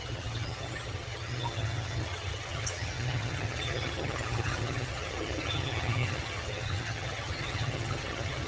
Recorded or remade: remade